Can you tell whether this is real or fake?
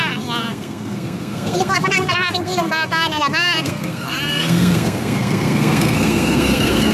fake